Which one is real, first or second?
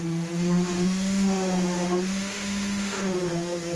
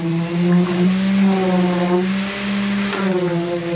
second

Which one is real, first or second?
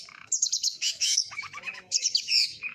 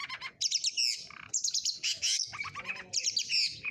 second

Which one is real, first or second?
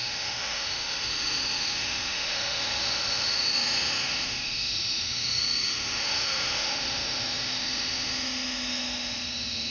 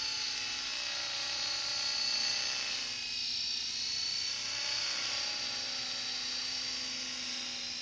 second